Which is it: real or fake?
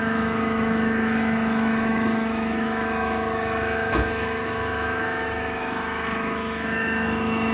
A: fake